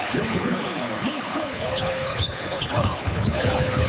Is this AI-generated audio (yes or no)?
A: yes